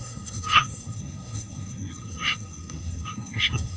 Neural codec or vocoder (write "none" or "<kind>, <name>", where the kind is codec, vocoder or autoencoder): codec, SNAC